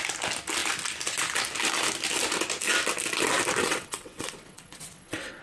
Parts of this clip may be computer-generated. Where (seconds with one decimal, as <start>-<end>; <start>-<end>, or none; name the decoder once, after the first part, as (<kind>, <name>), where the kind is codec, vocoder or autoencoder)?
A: 3.6-5.4 (vocoder, WaveNeXt)